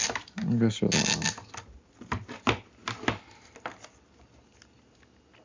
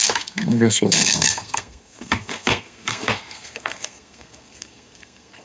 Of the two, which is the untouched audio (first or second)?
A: first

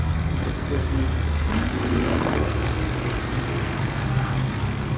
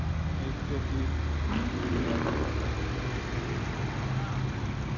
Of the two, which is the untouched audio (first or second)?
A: second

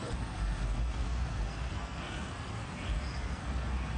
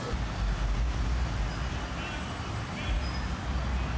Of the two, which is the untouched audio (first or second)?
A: second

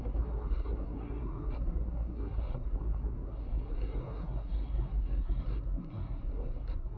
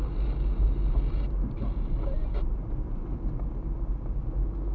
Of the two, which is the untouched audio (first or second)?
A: second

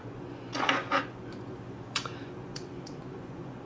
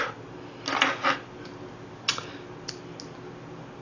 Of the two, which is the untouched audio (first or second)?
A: second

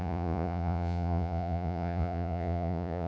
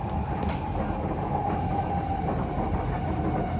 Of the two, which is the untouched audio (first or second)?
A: second